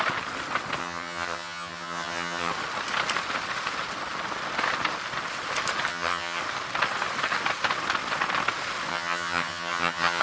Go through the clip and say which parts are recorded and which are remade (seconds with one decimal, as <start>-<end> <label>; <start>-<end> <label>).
0.0-0.8 recorded; 0.8-2.5 remade; 2.5-5.9 recorded; 5.9-6.4 remade; 6.4-8.9 recorded; 8.9-10.2 remade